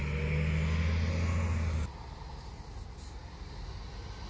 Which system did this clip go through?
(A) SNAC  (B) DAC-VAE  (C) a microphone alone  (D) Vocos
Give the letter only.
C